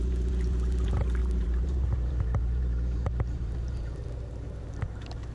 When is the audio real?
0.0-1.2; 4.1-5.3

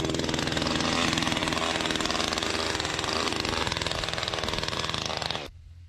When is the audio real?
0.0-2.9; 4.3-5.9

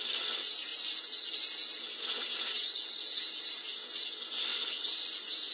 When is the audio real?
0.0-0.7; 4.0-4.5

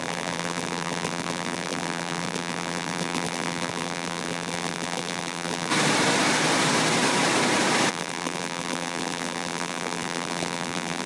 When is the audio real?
5.7-7.9